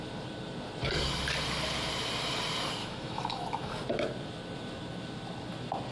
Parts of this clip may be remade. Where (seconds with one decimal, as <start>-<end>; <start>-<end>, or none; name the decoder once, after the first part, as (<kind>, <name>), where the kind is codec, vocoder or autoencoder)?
2.8-3.7 (autoencoder, DAC-VAE)